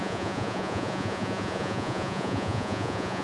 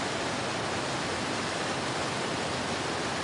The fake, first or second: first